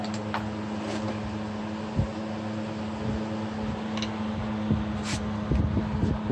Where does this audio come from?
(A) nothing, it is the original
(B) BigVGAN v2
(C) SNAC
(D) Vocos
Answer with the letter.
A